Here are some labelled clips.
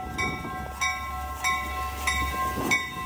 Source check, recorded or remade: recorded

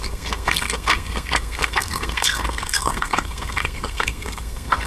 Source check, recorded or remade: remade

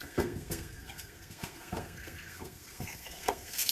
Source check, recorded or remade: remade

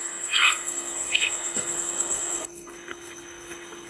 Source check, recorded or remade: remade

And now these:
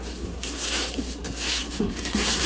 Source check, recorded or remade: remade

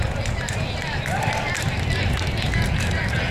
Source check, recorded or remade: recorded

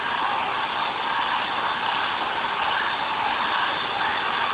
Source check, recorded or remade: recorded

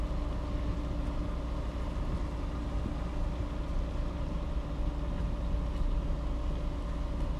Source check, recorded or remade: recorded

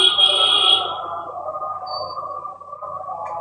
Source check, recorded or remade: recorded